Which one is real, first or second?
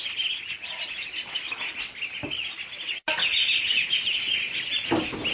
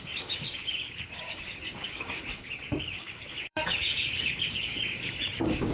first